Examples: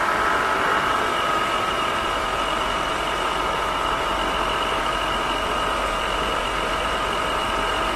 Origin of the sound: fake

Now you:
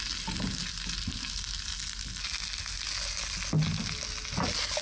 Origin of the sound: real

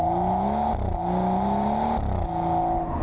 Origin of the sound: real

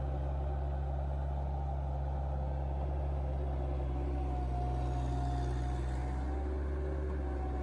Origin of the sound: real